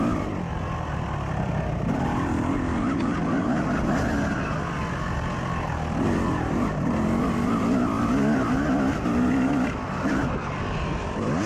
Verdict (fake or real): real